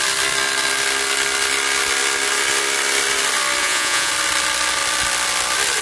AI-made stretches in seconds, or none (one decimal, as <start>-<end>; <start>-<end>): 3.6-4.1